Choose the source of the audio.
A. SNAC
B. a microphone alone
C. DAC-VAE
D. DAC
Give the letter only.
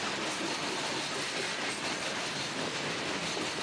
B